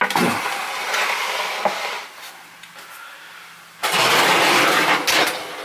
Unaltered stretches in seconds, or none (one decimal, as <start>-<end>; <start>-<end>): 0.0-3.8; 4.7-5.6